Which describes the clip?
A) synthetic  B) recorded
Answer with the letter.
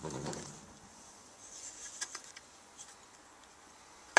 A